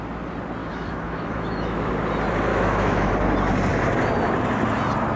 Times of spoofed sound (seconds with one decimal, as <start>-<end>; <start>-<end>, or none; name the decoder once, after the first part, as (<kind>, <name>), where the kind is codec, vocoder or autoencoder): 0.6-1.9 (autoencoder, DAC-VAE); 2.5-3.1